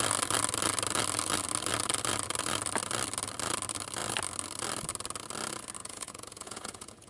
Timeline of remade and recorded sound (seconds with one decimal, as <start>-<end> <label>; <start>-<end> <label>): 0.0-5.8 recorded; 5.8-7.1 remade